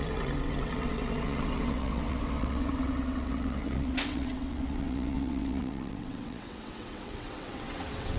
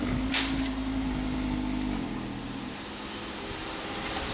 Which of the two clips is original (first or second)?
second